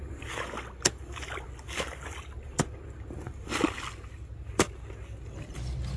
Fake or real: real